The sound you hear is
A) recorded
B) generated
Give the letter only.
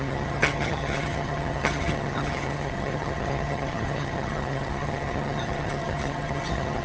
B